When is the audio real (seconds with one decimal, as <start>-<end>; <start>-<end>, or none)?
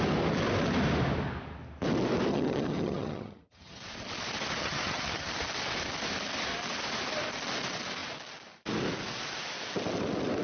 0.0-2.3; 3.8-4.6; 5.3-10.4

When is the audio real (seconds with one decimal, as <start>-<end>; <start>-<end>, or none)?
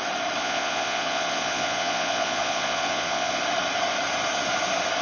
0.0-0.4; 3.4-5.0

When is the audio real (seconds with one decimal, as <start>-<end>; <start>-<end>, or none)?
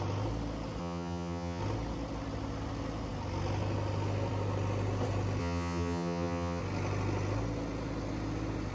0.0-0.8; 1.6-5.4; 6.6-8.7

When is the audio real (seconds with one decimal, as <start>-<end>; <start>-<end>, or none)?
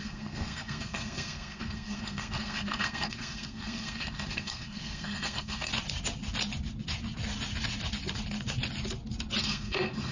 5.7-9.4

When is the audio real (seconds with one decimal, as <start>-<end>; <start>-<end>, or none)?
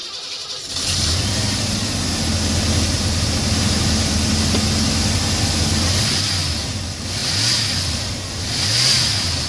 1.8-2.9; 4.3-9.5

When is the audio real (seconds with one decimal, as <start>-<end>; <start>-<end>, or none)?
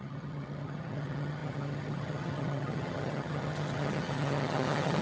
none